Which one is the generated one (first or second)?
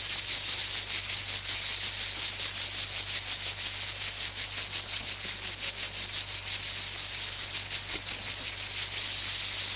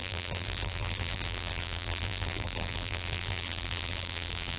second